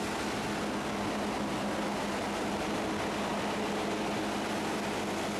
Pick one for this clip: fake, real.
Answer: real